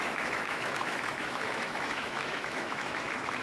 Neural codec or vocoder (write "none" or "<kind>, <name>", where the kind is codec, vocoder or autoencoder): autoencoder, DAC-VAE